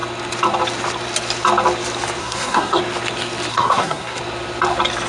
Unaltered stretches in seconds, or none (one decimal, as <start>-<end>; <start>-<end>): 0.0-2.2; 2.8-3.5; 4.2-5.1